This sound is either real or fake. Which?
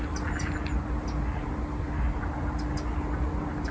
real